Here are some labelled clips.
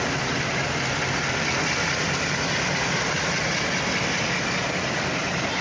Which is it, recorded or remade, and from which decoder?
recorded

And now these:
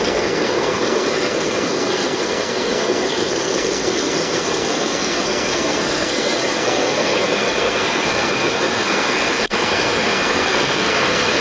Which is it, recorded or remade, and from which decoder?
remade, codec, SNAC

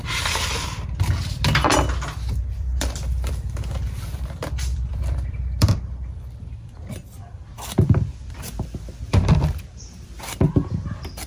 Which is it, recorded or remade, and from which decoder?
remade, vocoder, BigVGAN v2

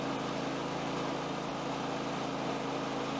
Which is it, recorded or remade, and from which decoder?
recorded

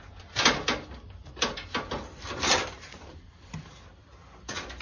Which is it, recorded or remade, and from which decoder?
recorded